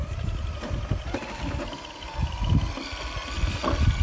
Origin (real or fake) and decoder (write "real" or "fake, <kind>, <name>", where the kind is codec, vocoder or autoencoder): real